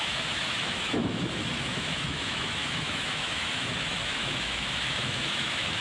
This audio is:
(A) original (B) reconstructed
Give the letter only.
B